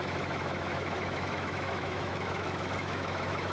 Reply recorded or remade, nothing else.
remade